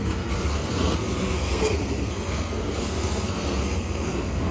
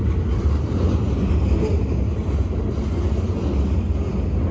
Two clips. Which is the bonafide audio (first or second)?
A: second